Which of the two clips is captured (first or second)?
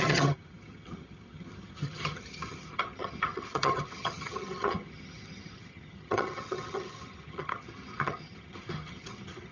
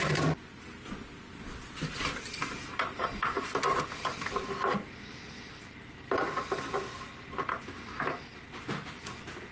second